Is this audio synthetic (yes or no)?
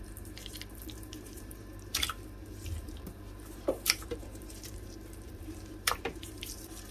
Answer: yes